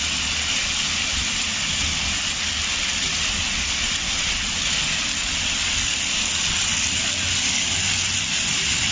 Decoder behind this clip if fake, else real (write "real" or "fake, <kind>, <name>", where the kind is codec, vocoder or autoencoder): real